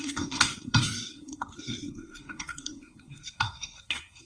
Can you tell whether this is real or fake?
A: fake